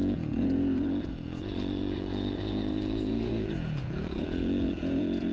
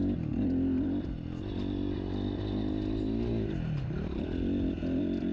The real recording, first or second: second